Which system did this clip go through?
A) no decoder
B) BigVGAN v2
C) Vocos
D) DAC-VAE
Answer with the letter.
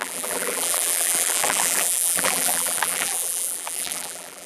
B